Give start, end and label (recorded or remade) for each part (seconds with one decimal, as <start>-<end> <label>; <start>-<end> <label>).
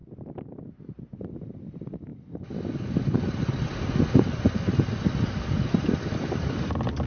0.0-7.1 recorded